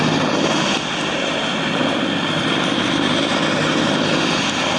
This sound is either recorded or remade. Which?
recorded